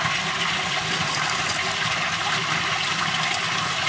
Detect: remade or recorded recorded